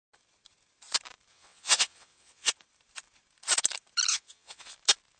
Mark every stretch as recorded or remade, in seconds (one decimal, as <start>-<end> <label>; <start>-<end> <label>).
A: 0.0-1.3 recorded; 1.3-2.5 remade; 2.5-4.1 recorded; 4.1-4.7 remade; 4.7-5.2 recorded